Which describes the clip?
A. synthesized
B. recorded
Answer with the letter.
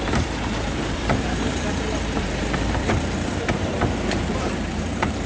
A